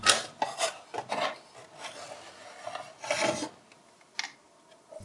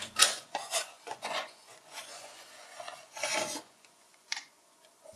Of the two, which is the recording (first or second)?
first